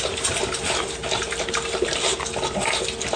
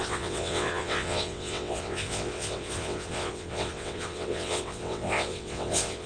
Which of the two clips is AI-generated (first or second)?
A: second